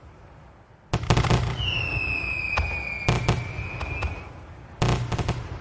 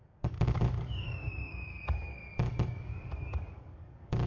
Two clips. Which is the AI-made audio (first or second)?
second